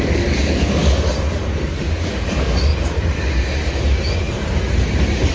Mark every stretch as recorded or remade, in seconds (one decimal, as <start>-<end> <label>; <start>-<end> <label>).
0.0-0.8 remade; 0.8-1.4 recorded; 1.4-2.7 remade; 2.7-5.3 recorded